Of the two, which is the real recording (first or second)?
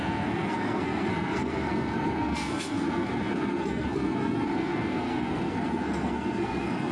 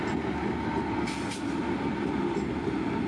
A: second